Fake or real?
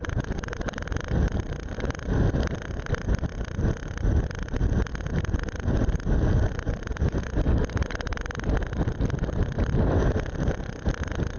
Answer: real